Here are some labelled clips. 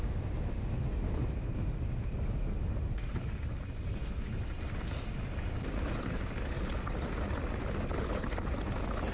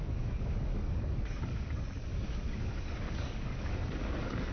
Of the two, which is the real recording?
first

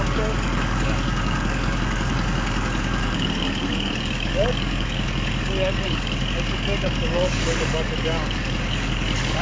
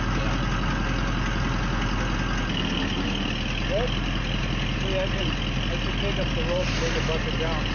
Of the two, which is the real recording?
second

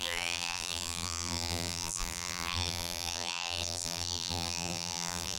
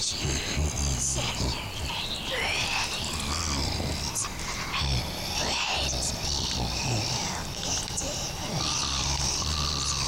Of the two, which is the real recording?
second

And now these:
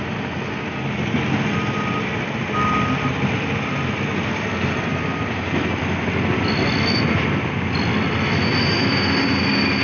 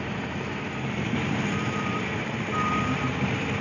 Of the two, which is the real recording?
first